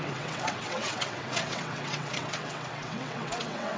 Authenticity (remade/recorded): remade